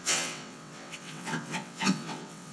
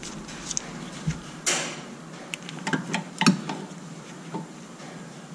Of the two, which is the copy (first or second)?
first